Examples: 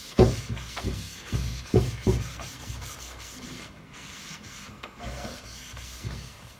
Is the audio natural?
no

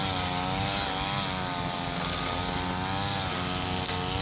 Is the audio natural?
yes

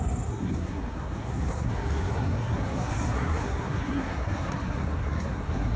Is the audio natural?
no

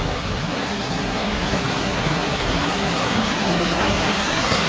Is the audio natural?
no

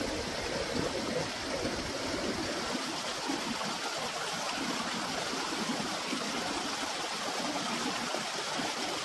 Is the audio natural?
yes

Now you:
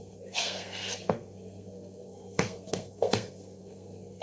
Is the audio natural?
no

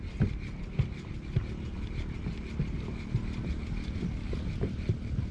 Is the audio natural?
yes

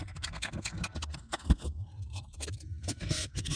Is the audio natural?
no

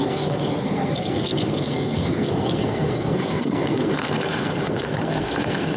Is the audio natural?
no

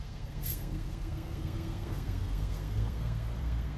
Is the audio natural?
no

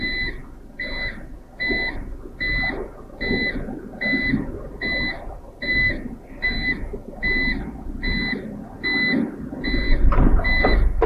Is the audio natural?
yes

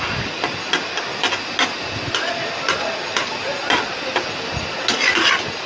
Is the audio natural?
yes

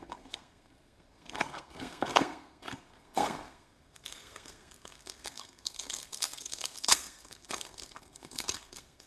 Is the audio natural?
no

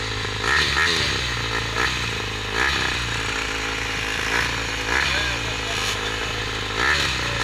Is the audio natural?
yes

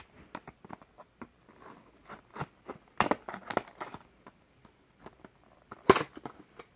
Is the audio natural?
yes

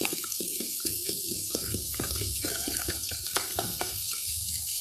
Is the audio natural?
no